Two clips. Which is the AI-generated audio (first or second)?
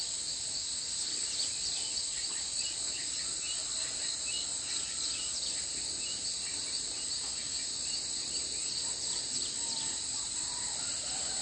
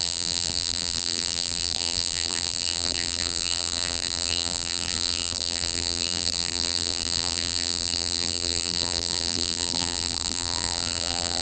second